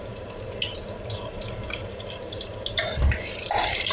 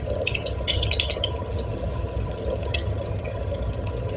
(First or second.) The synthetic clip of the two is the second